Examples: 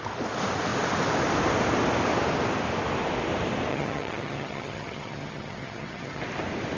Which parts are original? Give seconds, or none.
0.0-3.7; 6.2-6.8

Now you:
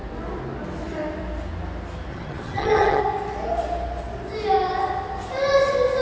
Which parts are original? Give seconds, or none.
0.0-2.1; 3.0-6.0

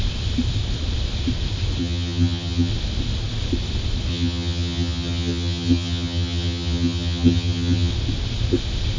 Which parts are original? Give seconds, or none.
0.0-1.8; 2.7-4.1; 7.9-9.0